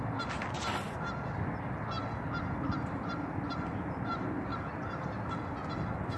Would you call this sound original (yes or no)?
yes